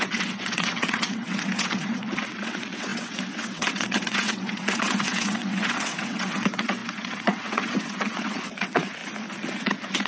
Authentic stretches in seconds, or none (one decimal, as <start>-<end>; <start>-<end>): 9.0-9.5